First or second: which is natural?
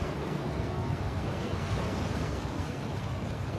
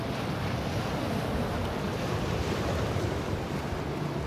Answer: second